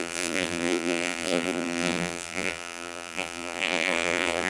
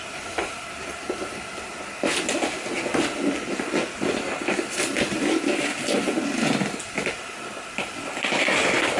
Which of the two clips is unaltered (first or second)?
second